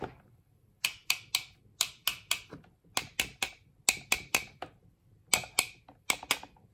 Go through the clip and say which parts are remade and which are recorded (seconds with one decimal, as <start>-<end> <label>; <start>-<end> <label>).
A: 0.0-4.3 recorded; 4.3-4.8 remade; 4.8-6.7 recorded